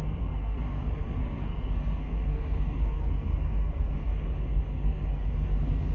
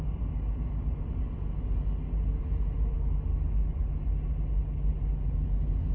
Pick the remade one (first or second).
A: first